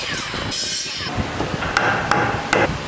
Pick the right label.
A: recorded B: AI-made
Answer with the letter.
A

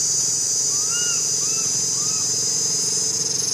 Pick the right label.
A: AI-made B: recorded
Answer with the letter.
B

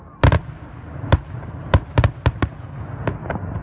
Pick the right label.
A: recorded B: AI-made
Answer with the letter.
A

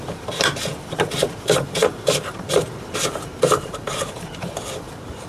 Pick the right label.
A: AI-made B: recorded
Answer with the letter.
A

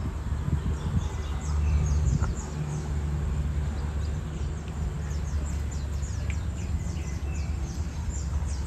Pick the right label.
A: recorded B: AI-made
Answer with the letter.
A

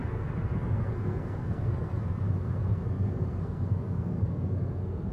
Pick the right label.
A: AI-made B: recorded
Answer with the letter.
A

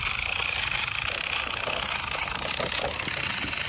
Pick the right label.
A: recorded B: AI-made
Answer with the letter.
A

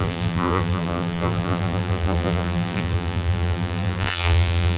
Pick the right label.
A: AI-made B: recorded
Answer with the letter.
A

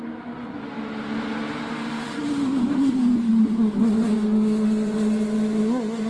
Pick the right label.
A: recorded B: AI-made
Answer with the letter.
A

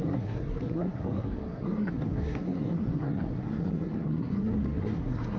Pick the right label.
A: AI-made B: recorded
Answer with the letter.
A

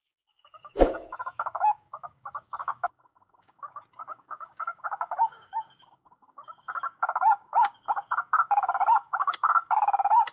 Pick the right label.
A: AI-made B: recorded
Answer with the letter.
A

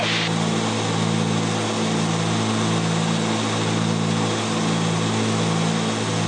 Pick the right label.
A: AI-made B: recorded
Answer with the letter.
B